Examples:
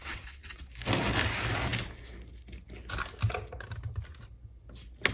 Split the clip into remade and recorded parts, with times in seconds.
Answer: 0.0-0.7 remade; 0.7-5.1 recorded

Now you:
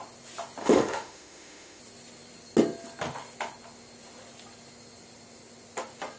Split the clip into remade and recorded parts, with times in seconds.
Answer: 0.0-0.6 recorded; 0.6-1.8 remade; 1.8-6.2 recorded

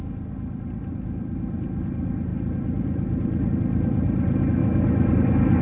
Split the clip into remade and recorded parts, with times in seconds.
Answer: 0.0-4.6 recorded; 4.6-5.1 remade; 5.1-5.6 recorded

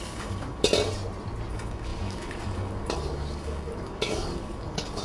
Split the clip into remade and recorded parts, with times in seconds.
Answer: 0.0-0.7 remade; 0.7-1.5 recorded; 1.5-5.0 remade

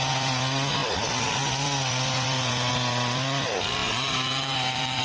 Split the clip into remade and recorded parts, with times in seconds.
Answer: 0.0-3.8 recorded; 3.8-5.0 remade